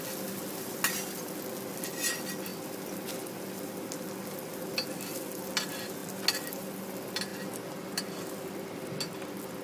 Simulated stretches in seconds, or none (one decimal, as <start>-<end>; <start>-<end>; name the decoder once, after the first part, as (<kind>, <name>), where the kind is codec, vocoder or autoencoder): none